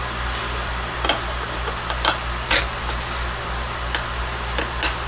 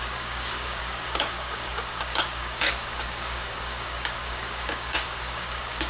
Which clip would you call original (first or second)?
first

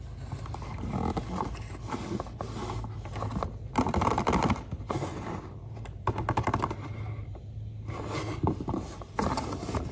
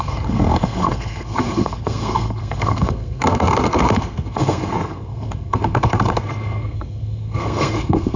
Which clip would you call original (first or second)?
first